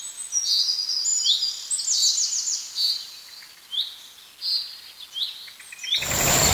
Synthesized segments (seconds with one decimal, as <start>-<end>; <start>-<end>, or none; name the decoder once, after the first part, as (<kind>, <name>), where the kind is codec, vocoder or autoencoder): none